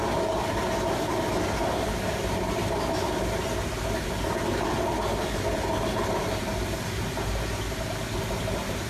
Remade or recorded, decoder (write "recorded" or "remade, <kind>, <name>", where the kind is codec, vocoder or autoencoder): recorded